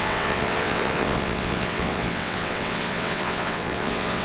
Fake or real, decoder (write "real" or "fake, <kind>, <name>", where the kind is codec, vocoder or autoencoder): fake, vocoder, WaveNeXt